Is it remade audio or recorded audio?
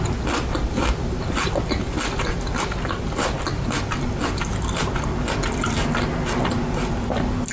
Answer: recorded